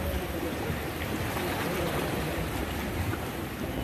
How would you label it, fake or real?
real